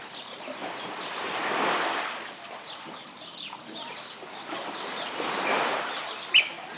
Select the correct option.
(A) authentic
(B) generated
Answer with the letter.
B